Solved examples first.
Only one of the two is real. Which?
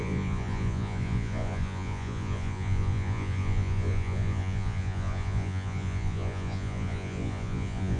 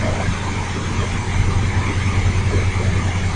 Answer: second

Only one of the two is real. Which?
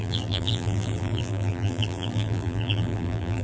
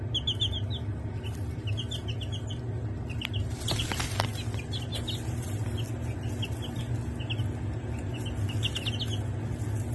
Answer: second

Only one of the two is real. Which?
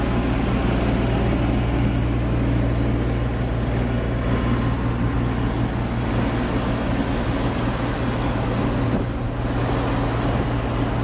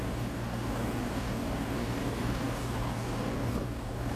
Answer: first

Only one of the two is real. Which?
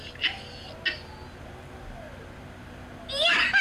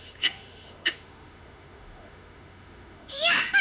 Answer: first